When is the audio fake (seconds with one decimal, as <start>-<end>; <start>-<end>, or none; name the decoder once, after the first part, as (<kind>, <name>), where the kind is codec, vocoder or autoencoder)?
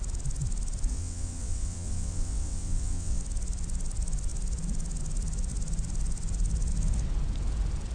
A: 0.9-3.2 (vocoder, WaveNeXt)